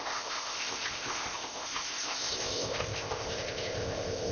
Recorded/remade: remade